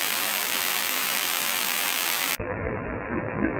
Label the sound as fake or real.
fake